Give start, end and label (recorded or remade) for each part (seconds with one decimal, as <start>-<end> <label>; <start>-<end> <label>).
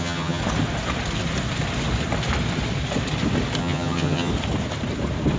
0.0-0.4 remade; 0.4-3.6 recorded; 3.6-4.3 remade; 4.3-5.4 recorded